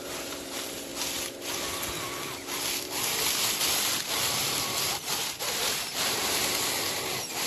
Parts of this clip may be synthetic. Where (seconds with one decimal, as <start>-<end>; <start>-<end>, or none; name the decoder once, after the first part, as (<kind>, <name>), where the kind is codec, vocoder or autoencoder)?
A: 0.0-0.9 (vocoder, BigVGAN v2); 5.4-6.4; 7.1-7.5